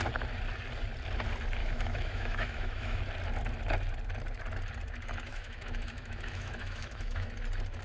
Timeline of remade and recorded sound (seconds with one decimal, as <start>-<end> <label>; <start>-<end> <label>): 0.0-1.6 recorded; 1.6-3.0 remade; 3.0-5.3 recorded; 5.3-7.3 remade; 7.3-7.8 recorded